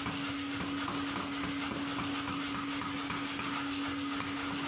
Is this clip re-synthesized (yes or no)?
no